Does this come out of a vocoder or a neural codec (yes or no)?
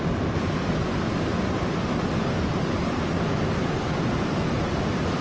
no